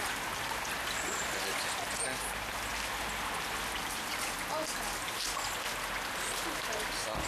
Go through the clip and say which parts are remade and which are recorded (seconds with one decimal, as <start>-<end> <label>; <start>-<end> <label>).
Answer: 0.0-7.3 recorded